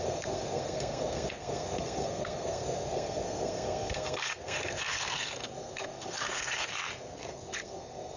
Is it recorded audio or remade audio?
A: remade